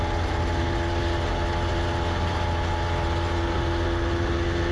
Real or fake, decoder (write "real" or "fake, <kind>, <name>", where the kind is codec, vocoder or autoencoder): real